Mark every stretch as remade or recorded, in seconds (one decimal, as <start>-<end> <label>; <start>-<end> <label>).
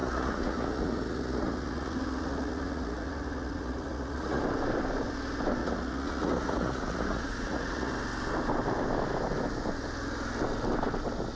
0.0-4.4 remade; 4.4-5.6 recorded; 5.6-7.9 remade; 7.9-11.4 recorded